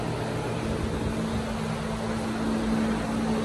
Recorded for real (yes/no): yes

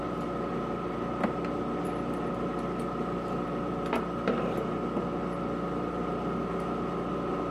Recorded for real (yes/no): yes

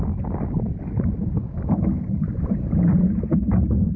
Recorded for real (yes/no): yes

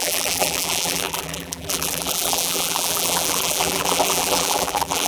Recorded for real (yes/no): no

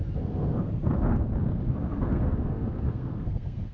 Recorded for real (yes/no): no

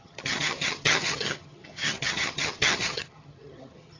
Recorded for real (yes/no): no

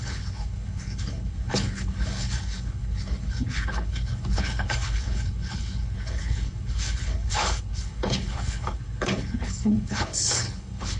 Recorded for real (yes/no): no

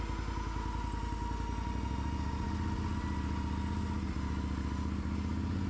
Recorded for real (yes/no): yes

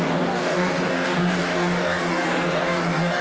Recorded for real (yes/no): no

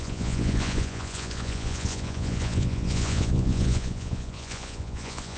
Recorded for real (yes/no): no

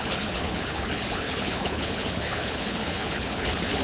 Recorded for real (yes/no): no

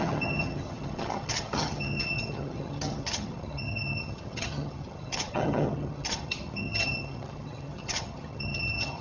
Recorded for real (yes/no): no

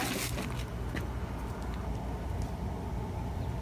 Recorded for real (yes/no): yes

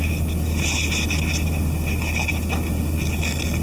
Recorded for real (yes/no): yes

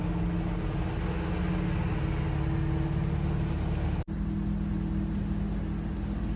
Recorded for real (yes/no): yes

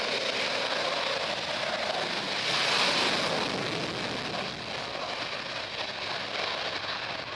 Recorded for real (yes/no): yes